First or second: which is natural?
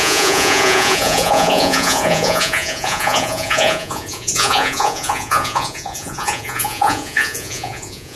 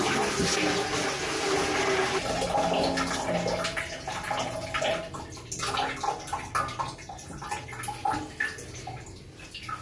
second